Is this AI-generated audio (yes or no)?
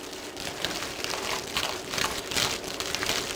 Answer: yes